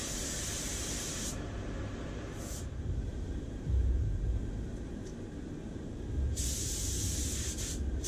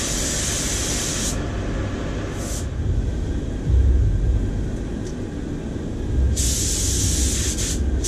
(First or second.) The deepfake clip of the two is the first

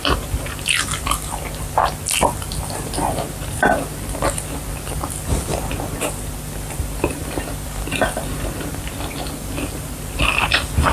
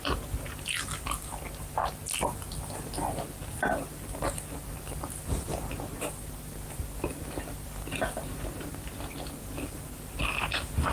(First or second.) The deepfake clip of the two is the first